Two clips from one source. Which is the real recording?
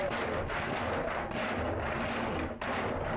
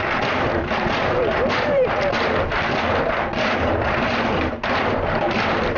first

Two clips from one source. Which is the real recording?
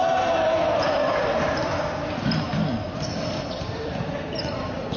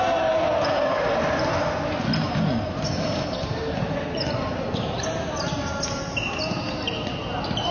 second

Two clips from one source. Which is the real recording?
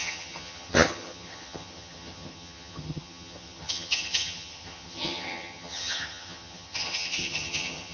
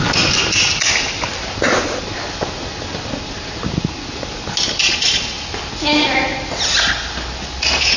second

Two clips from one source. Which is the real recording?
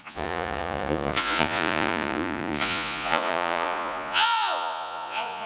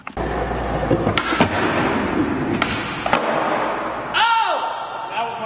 second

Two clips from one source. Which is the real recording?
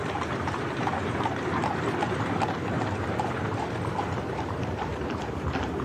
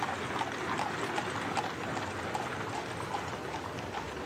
second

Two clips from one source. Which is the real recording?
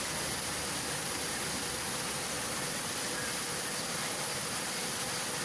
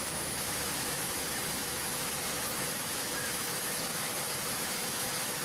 first